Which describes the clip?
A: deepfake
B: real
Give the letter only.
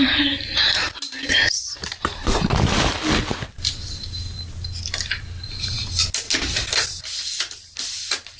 B